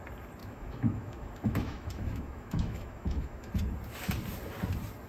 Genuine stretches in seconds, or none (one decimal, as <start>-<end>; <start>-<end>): 0.0-0.4; 3.5-5.1